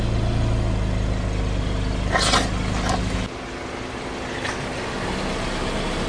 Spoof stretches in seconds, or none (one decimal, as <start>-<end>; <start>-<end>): none